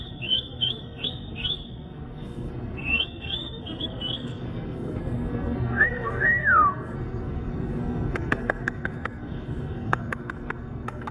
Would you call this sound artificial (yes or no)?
yes